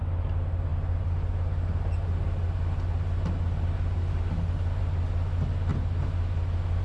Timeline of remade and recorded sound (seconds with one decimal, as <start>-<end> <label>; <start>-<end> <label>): 0.0-6.8 recorded